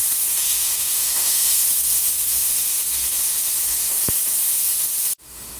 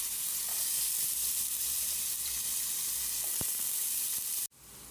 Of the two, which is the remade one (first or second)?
first